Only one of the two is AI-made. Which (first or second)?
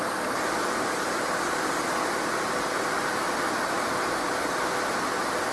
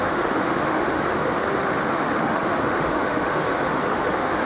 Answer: second